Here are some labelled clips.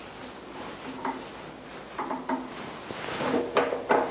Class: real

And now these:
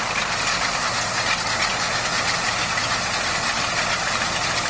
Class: real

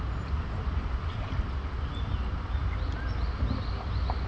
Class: real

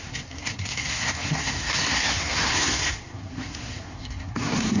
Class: fake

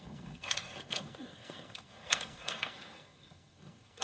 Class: fake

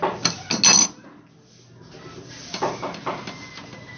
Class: real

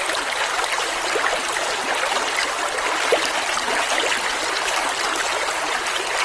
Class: real